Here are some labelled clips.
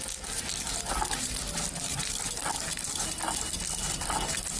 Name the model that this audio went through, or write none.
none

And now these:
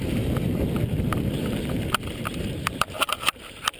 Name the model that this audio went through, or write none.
vocoder, BigVGAN v2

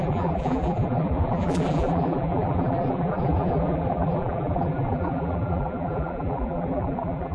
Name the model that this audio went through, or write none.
vocoder, BigVGAN v2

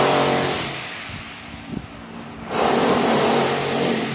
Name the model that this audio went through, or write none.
vocoder, BigVGAN v2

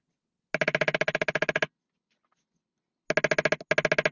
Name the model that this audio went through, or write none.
none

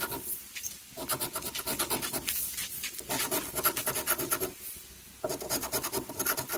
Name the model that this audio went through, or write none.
none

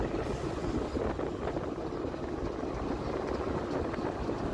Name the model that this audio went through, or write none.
none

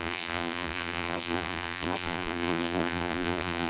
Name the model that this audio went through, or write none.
vocoder, BigVGAN v2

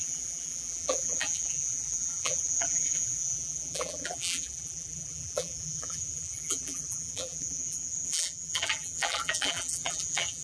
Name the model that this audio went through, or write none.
vocoder, BigVGAN v2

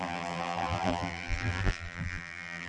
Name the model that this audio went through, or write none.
vocoder, BigVGAN v2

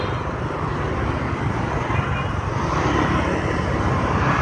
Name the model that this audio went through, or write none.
none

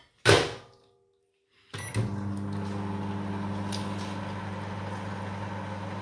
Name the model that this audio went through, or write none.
none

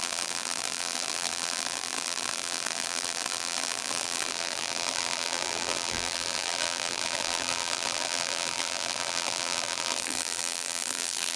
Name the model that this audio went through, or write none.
vocoder, BigVGAN v2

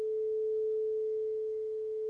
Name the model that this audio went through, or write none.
none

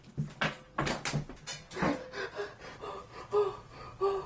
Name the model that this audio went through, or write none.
none